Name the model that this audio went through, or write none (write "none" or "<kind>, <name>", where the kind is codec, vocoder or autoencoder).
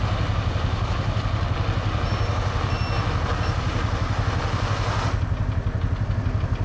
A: none